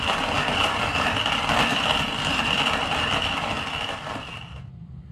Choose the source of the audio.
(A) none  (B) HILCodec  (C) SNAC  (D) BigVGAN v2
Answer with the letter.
A